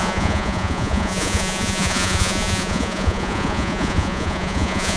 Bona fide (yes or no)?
no